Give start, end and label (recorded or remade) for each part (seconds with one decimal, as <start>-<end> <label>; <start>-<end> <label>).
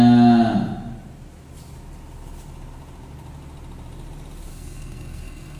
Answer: 0.0-4.5 recorded; 4.5-5.6 remade